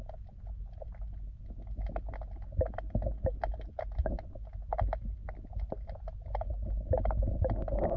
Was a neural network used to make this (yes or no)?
no